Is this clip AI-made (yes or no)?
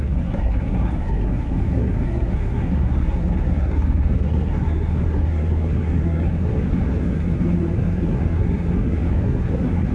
yes